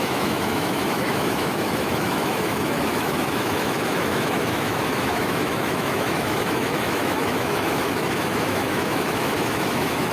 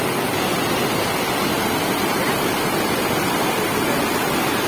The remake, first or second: first